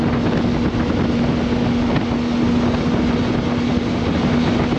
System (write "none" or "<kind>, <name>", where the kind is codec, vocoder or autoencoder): none